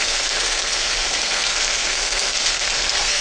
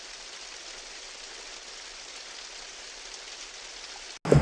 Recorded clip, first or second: second